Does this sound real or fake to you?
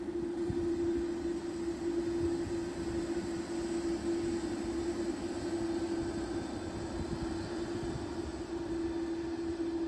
real